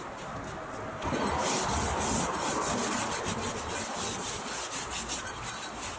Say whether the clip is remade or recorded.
recorded